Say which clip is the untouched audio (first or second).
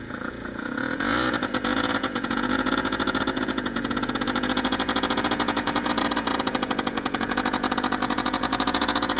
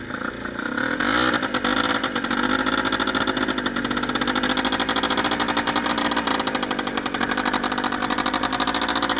second